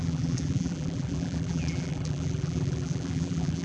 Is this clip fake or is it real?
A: fake